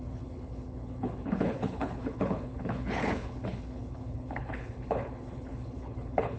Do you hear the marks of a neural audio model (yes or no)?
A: yes